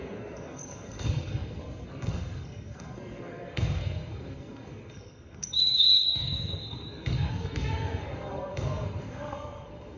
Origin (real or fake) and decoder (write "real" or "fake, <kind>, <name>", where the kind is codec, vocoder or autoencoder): fake, codec, SNAC